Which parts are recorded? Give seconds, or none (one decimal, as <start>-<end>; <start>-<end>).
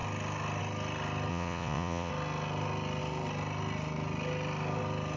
0.0-1.3; 2.1-5.2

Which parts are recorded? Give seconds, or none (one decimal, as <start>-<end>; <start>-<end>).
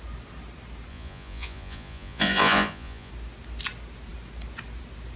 0.0-0.9; 3.1-5.2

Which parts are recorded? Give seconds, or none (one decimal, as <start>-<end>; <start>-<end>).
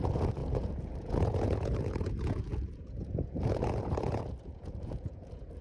none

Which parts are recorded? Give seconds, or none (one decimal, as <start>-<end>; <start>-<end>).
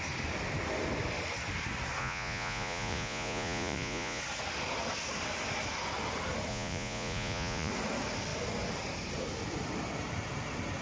0.0-2.0; 4.2-6.5; 7.7-10.8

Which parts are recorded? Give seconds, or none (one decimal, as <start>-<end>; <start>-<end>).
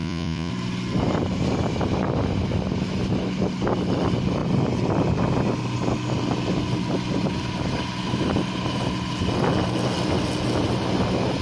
0.5-11.4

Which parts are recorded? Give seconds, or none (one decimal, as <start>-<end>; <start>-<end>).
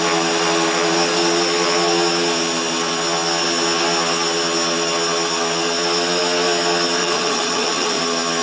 0.0-7.0; 8.0-8.4